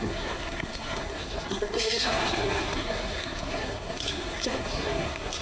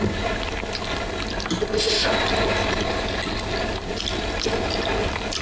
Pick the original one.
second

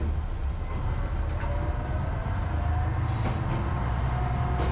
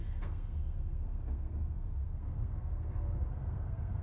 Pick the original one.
first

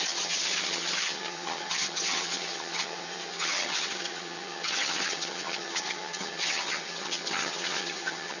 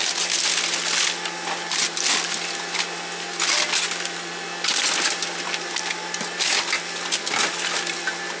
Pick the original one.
second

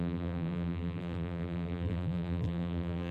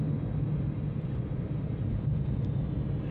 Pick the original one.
second